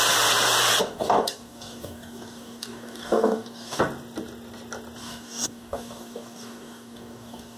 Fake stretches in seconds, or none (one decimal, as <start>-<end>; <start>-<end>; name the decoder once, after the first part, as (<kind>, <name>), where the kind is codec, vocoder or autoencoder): 0.8-3.8 (codec, DAC); 5.0-7.6